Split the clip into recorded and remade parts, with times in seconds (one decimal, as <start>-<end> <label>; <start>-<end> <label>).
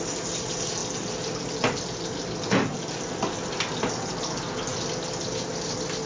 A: 0.0-6.1 recorded